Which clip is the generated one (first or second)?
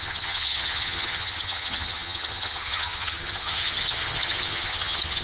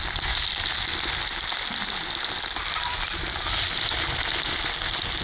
first